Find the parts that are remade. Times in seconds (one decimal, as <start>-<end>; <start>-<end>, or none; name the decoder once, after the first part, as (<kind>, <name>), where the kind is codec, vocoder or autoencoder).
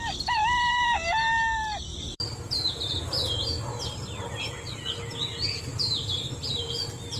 0.7-1.2 (vocoder, BigVGAN v2); 1.9-3.0; 5.7-6.7